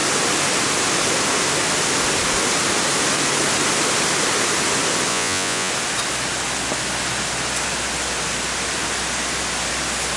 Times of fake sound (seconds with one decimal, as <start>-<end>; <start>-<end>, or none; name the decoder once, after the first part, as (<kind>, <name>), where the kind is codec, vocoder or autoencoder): 5.1-5.7 (vocoder, Vocos)

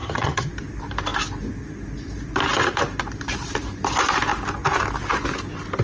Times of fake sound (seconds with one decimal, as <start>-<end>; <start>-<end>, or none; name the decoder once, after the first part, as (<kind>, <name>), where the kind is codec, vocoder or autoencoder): 0.0-0.5 (vocoder, HiFi-GAN)

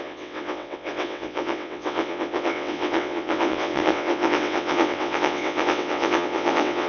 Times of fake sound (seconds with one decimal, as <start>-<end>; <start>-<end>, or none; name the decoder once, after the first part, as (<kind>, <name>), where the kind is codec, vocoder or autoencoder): 0.0-6.9 (vocoder, WaveNeXt)